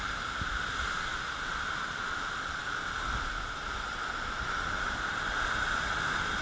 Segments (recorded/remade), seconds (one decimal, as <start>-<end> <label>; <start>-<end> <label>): 0.0-6.4 recorded